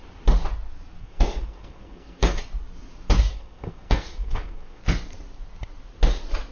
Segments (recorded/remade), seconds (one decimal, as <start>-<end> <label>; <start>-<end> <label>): 0.0-1.0 recorded; 1.0-2.4 remade; 2.4-3.3 recorded; 3.3-4.8 remade; 4.8-6.5 recorded